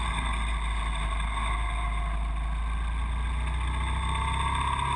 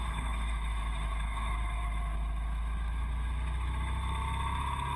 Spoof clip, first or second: second